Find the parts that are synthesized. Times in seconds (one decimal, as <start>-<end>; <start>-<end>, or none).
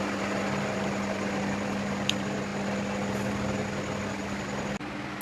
none